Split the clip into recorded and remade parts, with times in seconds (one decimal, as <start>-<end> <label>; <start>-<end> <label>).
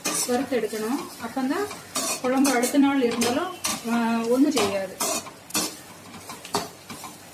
0.0-1.6 recorded; 1.6-3.3 remade; 3.3-3.7 recorded; 3.7-4.5 remade; 4.5-7.3 recorded